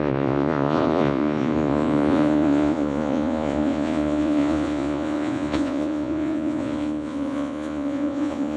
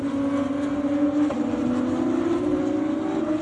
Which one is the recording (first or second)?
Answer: second